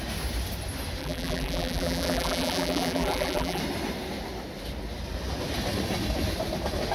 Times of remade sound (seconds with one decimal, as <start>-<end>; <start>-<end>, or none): 1.0-3.6